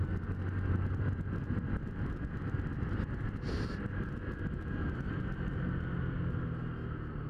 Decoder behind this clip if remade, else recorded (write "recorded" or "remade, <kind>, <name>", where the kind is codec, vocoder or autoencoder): recorded